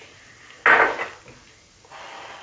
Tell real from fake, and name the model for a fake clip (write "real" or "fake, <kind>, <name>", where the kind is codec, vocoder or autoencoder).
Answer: real